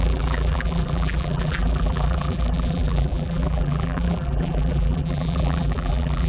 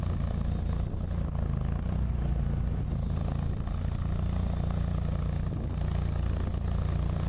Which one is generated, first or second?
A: first